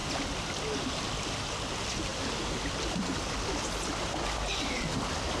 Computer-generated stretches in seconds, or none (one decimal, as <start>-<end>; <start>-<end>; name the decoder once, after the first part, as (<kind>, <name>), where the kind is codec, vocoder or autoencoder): none